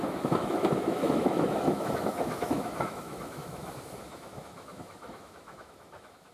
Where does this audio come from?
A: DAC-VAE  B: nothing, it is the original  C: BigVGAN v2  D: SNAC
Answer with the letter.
A